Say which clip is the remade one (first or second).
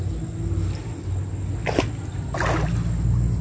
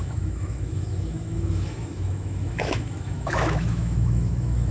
second